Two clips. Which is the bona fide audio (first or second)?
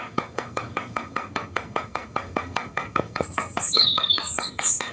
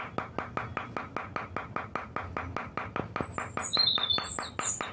second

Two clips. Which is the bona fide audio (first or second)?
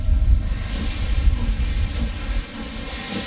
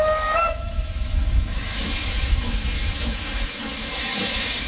first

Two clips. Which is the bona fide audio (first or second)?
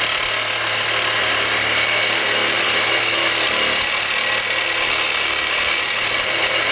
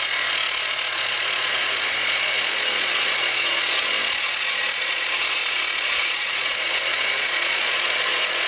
first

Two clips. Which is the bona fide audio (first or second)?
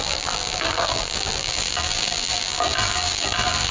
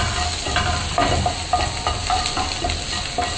second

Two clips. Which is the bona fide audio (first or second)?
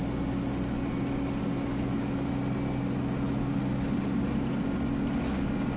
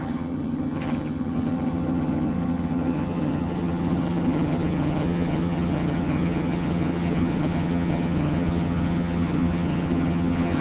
first